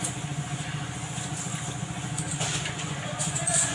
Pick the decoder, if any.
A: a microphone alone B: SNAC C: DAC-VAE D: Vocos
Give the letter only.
D